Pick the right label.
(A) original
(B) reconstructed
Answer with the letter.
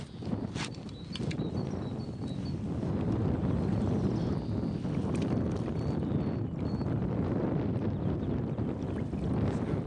A